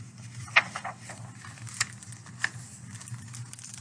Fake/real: real